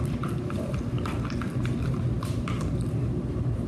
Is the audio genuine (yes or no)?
yes